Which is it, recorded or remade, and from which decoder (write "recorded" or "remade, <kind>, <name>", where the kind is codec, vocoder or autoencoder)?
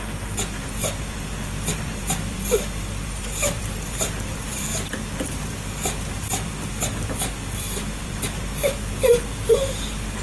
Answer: remade, vocoder, BigVGAN v2